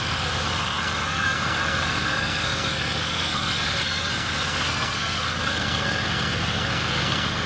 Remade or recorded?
remade